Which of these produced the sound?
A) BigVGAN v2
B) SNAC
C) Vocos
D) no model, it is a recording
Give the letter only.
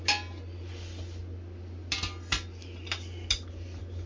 D